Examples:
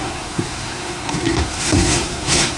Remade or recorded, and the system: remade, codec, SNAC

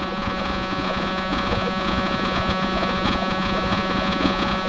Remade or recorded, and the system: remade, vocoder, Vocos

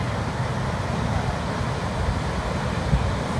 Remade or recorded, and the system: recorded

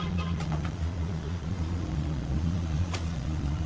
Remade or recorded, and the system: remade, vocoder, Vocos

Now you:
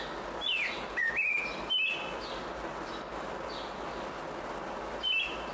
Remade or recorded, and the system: recorded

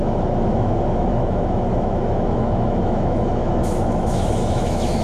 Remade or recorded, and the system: remade, autoencoder, DAC-VAE